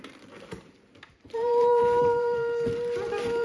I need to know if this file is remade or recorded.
remade